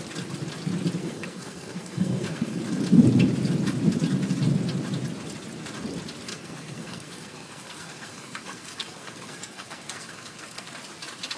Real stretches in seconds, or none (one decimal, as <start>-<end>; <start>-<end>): 0.0-1.0; 2.6-6.3; 10.7-11.4